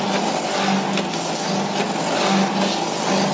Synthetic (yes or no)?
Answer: no